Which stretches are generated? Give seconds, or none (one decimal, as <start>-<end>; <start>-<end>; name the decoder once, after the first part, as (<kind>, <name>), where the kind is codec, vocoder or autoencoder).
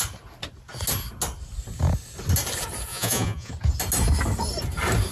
2.9-3.5 (vocoder, Vocos)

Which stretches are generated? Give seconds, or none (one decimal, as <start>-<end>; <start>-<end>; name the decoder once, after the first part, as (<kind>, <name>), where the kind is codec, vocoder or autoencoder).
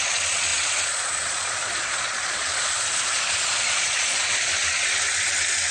0.0-4.5 (vocoder, Vocos)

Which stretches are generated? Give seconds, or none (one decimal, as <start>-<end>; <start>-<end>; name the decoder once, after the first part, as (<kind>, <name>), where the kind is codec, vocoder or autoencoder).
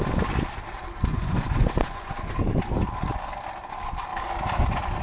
1.1-2.5 (vocoder, Vocos)